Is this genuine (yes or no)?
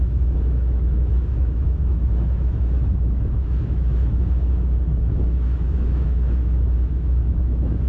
no